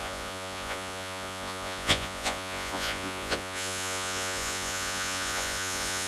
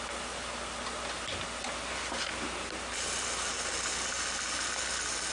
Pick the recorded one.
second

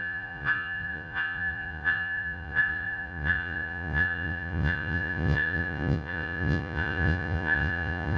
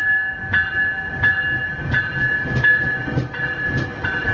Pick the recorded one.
second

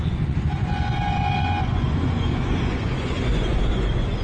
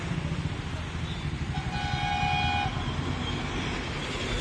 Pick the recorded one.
second